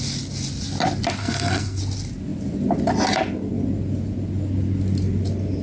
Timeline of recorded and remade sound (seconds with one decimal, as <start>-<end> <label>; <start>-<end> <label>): 0.0-1.2 recorded; 1.2-1.8 remade; 1.8-5.6 recorded